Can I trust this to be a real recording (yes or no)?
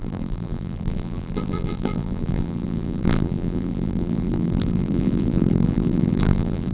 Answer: no